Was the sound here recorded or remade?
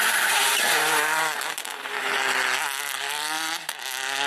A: recorded